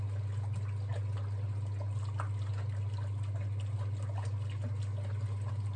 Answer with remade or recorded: recorded